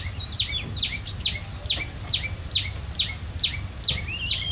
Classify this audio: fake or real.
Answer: real